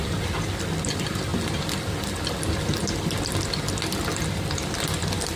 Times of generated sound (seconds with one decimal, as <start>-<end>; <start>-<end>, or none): none